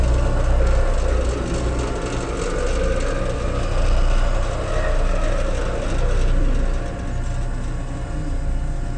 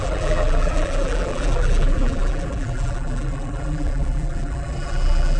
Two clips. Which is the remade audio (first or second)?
second